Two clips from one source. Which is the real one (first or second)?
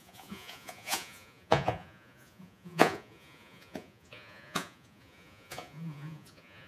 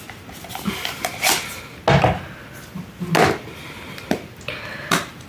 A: second